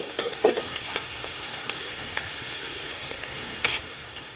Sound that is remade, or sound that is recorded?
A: remade